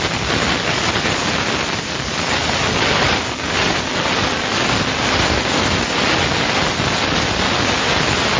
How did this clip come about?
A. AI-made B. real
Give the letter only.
B